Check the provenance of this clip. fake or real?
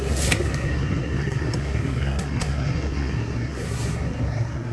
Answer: fake